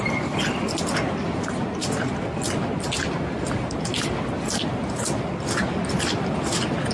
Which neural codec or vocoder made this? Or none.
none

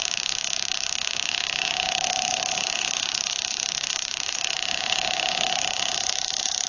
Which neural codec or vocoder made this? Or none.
codec, DAC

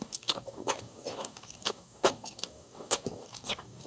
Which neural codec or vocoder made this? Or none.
codec, DAC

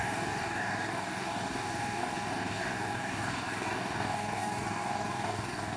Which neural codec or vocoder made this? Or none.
codec, DAC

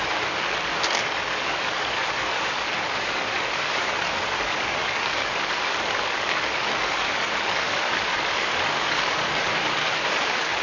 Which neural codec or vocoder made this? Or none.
codec, DAC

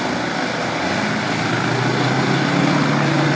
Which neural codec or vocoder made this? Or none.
none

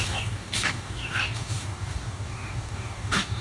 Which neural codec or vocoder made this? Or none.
codec, DAC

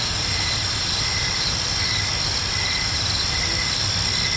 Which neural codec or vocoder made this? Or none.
none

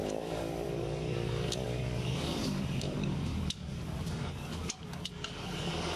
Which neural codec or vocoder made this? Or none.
codec, DAC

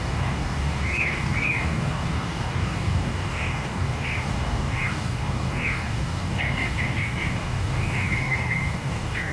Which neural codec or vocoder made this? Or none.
codec, DAC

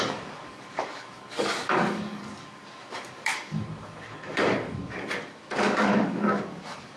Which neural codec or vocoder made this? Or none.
codec, DAC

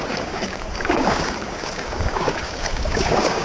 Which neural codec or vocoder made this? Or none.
codec, DAC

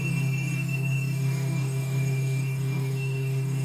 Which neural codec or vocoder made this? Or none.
codec, DAC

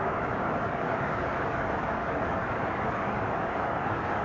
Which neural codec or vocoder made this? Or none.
codec, DAC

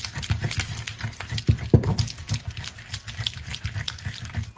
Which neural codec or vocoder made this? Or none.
none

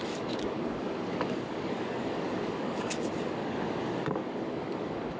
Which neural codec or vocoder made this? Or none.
codec, DAC